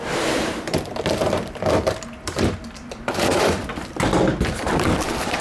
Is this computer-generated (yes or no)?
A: yes